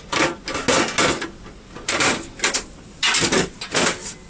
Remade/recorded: recorded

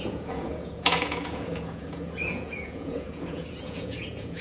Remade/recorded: remade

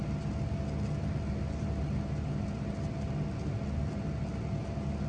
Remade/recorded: recorded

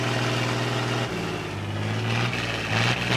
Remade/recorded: recorded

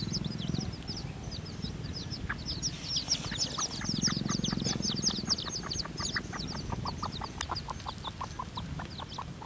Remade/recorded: recorded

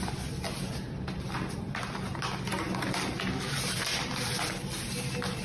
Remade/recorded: recorded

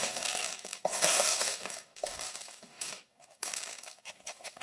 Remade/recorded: remade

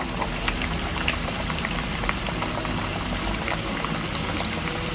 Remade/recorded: remade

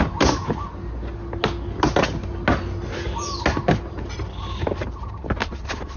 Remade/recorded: recorded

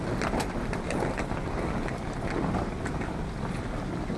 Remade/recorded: recorded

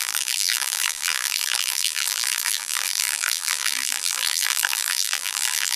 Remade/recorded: remade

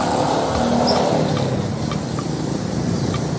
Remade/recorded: recorded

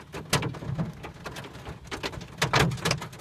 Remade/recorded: recorded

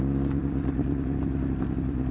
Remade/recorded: recorded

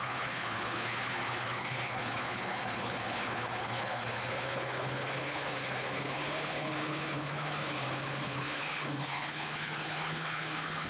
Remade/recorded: remade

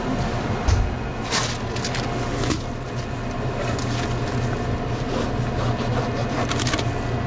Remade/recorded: recorded